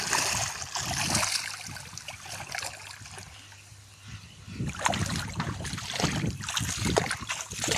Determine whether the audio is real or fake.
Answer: real